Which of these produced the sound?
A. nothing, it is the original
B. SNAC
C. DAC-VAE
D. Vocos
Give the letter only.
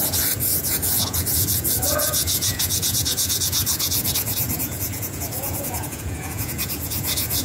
D